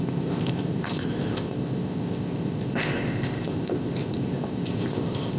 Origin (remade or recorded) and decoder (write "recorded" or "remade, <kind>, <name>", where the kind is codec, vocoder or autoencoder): remade, codec, ZipCodec